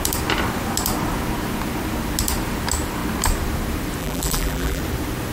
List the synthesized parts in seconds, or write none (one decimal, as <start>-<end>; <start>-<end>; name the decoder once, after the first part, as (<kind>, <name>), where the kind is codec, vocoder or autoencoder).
4.0-4.8 (vocoder, BigVGAN v2)